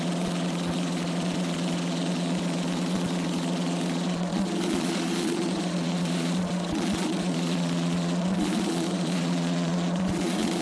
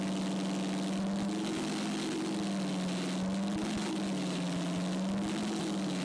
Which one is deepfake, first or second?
first